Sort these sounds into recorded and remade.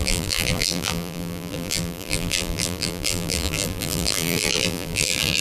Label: remade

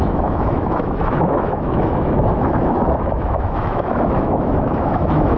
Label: remade